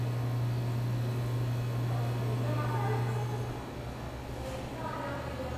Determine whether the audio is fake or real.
real